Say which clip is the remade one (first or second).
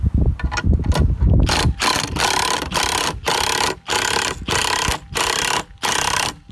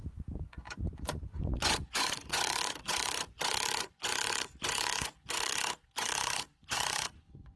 second